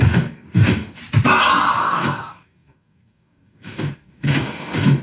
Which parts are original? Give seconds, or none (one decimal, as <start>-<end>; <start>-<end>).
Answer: 1.0-1.8